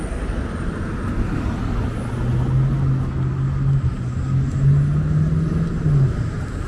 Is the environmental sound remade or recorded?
recorded